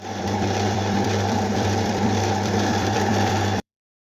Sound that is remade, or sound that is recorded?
remade